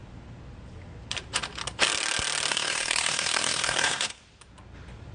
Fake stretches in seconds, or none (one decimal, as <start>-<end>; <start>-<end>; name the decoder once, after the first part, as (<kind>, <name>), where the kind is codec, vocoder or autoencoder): 2.5-4.2 (codec, SNAC)